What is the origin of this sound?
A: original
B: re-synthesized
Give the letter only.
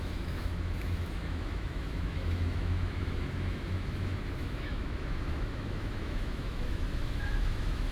B